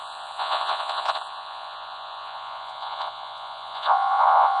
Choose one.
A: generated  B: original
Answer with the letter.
A